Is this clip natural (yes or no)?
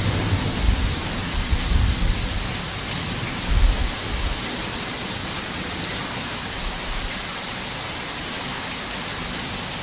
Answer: yes